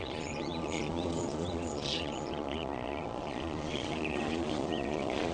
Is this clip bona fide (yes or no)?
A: no